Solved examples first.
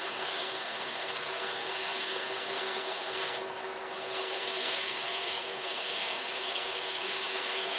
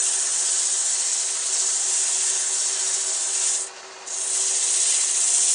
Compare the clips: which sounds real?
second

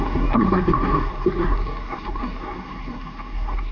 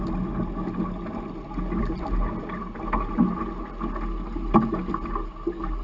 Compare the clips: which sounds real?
second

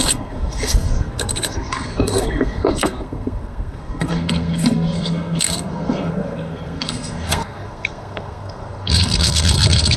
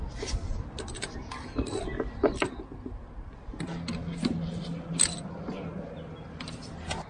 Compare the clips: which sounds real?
second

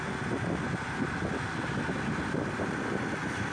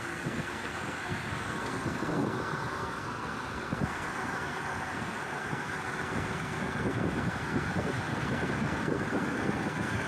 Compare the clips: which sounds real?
first